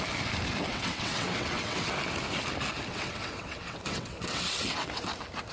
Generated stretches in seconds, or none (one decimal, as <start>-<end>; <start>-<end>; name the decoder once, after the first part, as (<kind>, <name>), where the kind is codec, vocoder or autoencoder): 0.7-1.9 (vocoder, WaveNeXt); 2.9-5.0